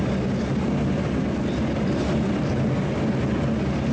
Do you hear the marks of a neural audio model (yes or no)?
no